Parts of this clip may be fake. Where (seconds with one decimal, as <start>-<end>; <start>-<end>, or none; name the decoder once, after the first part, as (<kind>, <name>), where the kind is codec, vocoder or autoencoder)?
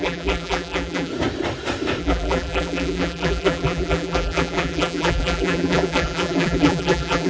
0.0-1.1 (vocoder, BigVGAN v2); 2.0-7.3